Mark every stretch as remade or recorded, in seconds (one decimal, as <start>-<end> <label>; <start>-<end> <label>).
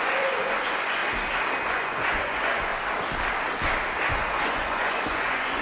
0.0-1.0 remade; 1.0-1.7 recorded; 1.7-2.7 remade; 2.7-4.1 recorded; 4.1-5.6 remade